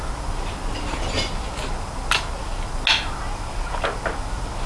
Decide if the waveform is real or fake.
real